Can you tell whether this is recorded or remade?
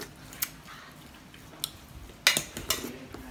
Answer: recorded